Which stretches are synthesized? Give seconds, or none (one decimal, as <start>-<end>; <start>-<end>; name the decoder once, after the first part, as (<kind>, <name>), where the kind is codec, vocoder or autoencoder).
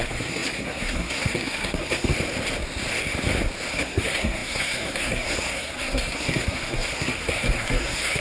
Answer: 0.0-2.1 (codec, SNAC); 3.7-8.2